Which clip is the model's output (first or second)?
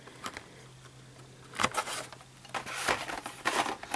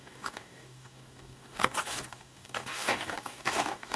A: second